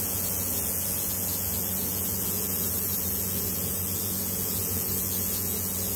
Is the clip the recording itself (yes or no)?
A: no